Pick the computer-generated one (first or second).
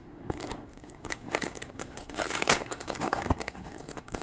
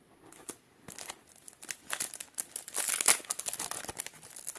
first